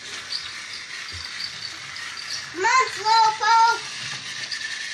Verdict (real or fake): real